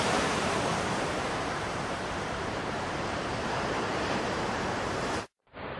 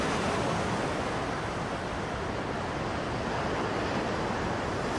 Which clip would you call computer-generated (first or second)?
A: first